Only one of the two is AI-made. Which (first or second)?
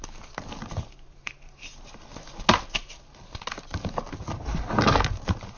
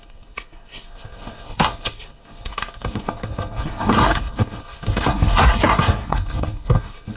second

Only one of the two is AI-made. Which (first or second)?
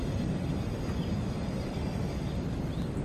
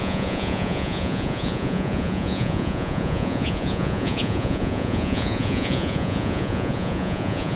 second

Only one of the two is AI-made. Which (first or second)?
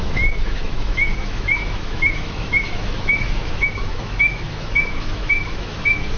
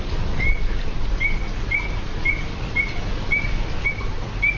first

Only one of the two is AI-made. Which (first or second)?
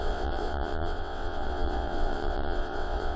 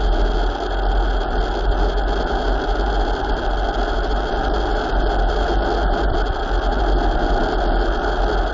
first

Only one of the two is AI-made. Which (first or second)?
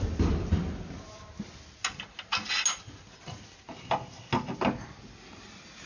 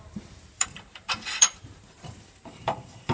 second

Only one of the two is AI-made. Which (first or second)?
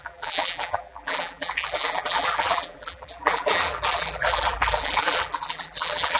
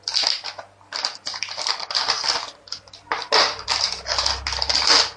first